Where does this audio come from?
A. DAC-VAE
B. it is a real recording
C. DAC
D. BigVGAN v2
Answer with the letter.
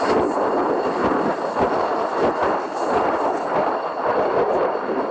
B